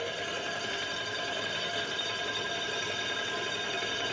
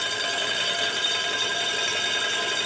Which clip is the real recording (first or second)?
second